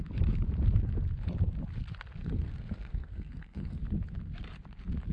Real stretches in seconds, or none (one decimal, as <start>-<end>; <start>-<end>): 0.0-2.2; 3.8-5.1